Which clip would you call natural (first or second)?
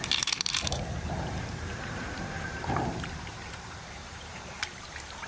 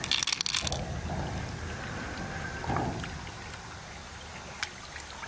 second